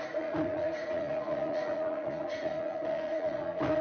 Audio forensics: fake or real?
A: fake